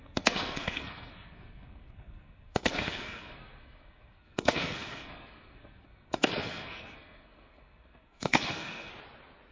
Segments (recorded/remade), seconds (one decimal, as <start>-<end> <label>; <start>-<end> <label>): 0.0-8.9 remade; 8.9-9.5 recorded